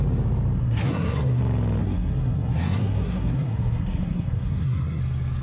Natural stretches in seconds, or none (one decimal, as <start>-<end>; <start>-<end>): 0.0-0.6; 1.4-1.8; 5.0-5.4